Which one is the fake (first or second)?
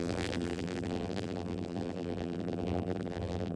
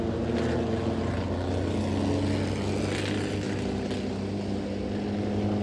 first